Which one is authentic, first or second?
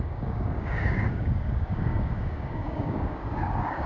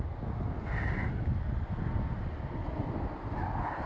second